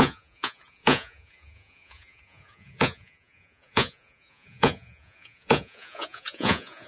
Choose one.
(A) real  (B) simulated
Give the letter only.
B